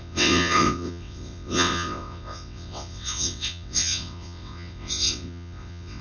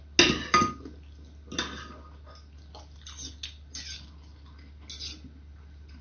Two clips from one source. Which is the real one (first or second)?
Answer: second